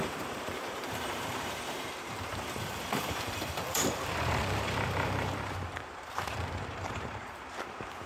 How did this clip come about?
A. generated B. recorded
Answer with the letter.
A